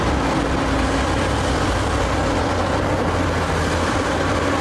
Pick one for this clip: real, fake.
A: real